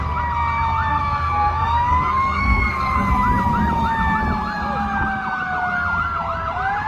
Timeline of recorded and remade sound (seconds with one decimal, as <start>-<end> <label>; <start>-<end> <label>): 0.0-0.9 recorded; 0.9-3.1 remade; 3.1-6.9 recorded